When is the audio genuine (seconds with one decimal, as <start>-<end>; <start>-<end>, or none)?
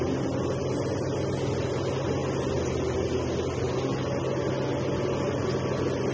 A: 0.0-6.1